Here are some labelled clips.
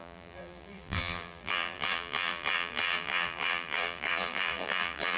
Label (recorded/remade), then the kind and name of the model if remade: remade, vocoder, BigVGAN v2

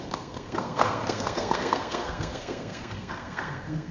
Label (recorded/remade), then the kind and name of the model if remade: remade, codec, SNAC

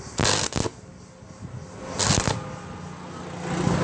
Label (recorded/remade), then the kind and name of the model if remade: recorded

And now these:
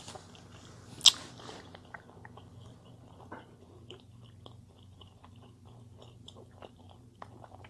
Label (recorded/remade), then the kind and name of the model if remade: recorded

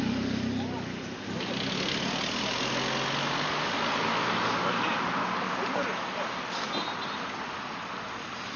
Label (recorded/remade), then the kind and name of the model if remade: recorded